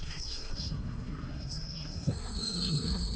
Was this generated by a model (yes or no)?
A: yes